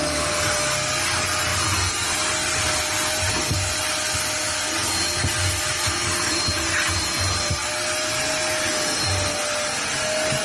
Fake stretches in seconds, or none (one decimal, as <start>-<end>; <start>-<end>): none